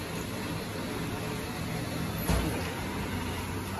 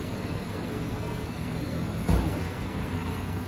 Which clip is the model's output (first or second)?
second